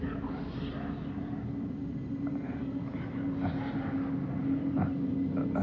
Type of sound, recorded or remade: recorded